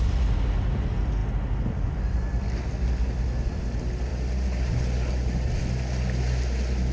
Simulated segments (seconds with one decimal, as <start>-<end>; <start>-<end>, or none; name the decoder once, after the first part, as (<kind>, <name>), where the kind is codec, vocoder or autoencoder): none